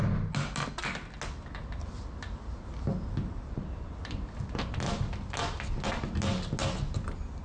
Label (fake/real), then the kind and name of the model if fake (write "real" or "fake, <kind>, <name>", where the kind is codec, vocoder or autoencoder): real